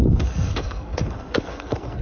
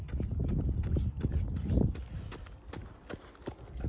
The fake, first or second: first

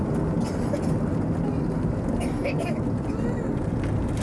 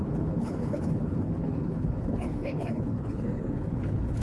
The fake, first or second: second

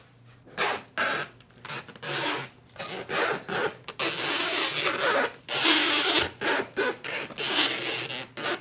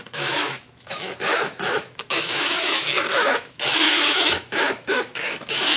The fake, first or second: second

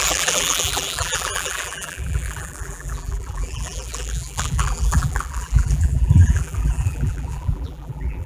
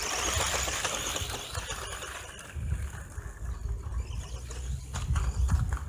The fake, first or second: first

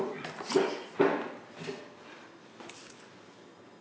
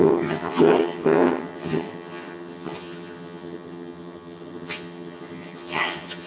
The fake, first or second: second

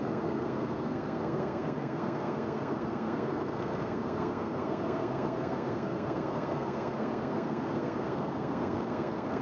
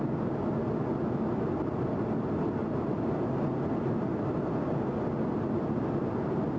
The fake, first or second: first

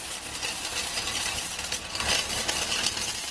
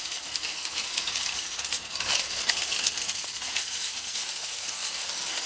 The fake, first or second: second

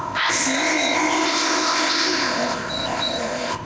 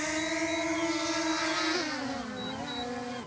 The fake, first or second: first